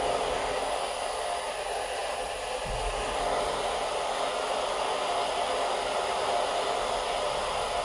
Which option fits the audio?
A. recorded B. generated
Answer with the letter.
A